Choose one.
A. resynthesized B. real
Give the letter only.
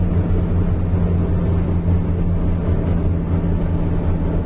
B